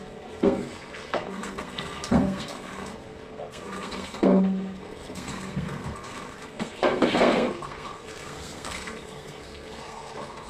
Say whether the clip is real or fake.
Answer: fake